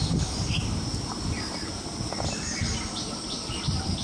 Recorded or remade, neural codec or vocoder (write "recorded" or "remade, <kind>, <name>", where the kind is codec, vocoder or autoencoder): recorded